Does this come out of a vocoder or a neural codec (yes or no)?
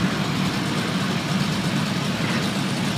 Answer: no